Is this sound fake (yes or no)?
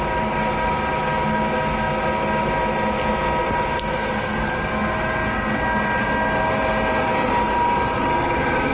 no